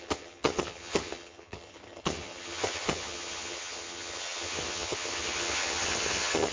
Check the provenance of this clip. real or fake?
fake